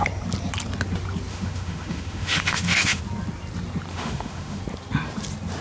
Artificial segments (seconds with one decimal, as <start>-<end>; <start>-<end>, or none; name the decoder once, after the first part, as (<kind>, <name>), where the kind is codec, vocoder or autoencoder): 1.3-3.0 (autoencoder, DAC-VAE); 3.9-4.6